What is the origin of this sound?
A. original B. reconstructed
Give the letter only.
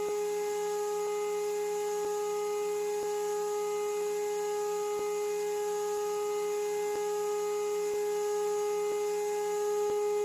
A